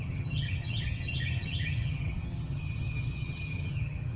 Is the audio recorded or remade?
remade